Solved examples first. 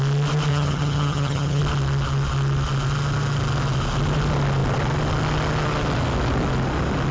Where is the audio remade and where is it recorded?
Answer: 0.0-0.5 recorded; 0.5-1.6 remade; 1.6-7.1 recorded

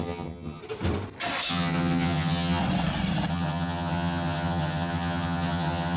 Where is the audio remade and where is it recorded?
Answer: 0.0-0.6 remade; 0.6-1.5 recorded; 1.5-2.6 remade; 2.6-3.3 recorded; 3.3-6.0 remade